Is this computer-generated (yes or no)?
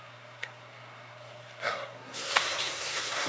yes